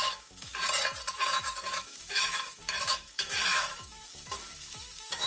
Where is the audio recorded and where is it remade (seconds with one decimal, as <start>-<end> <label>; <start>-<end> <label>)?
0.0-0.5 remade; 0.5-1.1 recorded; 1.1-5.3 remade